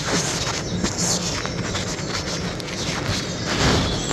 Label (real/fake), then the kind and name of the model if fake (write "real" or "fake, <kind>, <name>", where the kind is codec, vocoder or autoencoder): real